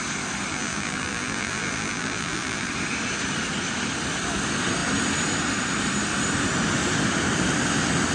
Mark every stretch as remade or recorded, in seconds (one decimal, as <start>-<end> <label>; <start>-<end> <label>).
0.0-0.5 recorded; 0.5-2.7 remade; 2.7-8.1 recorded